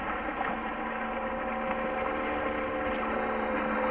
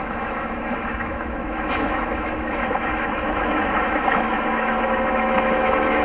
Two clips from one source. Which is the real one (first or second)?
first